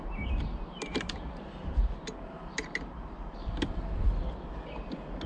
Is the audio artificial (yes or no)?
no